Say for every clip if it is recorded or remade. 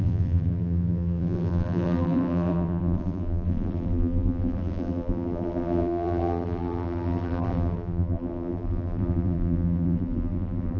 remade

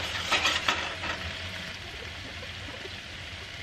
recorded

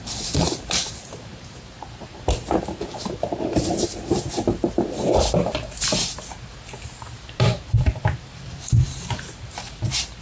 remade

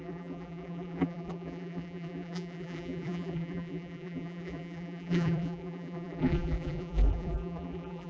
remade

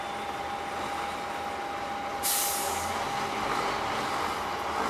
recorded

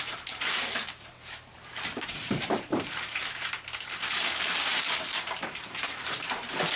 remade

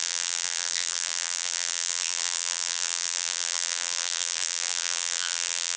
remade